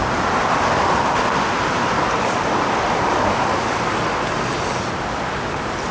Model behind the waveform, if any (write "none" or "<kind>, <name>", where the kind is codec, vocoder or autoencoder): none